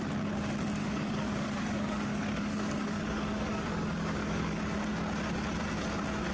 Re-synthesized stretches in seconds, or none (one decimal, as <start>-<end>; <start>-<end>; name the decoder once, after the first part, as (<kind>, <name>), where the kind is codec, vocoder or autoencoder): 0.8-4.6 (codec, DAC)